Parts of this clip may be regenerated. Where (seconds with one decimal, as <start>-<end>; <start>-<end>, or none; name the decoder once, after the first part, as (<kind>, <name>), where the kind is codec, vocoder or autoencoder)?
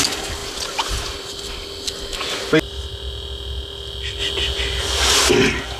none